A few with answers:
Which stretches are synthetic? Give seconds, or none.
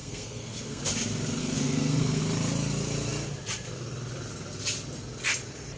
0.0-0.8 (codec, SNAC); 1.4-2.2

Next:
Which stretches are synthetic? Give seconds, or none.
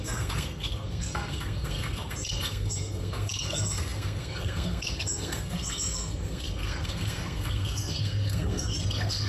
0.0-9.3 (codec, SNAC)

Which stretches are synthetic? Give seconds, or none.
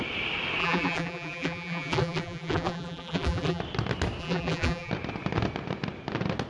0.6-3.6 (vocoder, BigVGAN v2); 4.2-4.9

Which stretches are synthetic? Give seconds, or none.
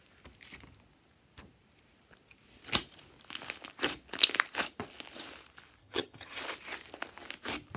5.8-6.4 (vocoder, HiFi-GAN)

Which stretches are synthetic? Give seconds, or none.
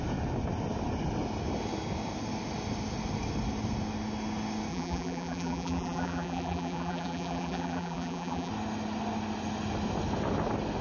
4.7-8.5 (vocoder, BigVGAN v2)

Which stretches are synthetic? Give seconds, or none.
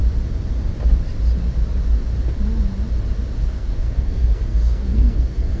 3.4-5.6 (codec, SNAC)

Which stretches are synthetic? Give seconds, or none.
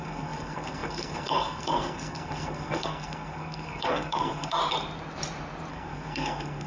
0.0-4.6 (codec, SNAC); 5.7-6.7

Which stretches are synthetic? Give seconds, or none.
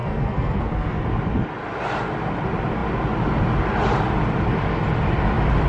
0.0-1.0 (codec, SNAC)